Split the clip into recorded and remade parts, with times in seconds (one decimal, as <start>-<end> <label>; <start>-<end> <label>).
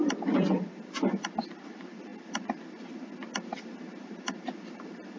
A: 0.0-5.2 recorded